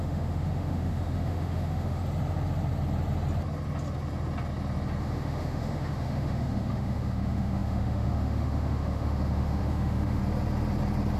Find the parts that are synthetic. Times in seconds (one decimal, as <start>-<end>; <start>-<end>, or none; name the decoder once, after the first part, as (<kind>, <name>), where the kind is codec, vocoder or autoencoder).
0.0-2.0 (autoencoder, DAC-VAE); 5.0-10.2